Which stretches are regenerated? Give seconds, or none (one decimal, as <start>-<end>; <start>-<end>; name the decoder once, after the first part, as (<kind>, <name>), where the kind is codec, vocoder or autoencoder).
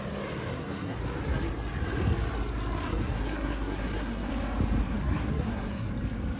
0.5-1.0 (codec, SNAC); 2.9-4.3; 4.8-5.9